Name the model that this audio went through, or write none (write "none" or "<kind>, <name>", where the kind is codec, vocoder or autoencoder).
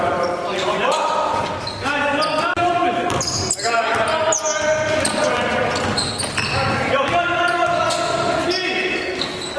none